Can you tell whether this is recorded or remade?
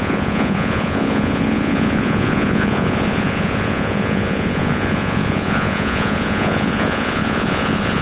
remade